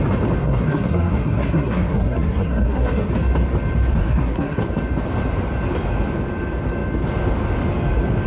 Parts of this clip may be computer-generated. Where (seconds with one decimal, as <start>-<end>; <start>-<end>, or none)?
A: 0.4-3.1; 4.0-4.6